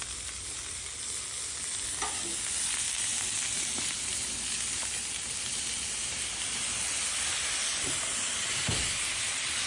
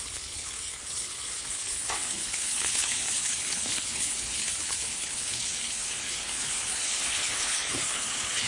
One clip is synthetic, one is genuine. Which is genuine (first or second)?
first